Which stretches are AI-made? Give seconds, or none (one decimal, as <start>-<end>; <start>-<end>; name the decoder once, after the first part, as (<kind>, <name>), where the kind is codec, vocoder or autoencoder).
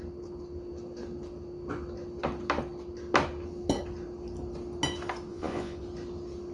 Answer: 5.3-5.8 (vocoder, Vocos)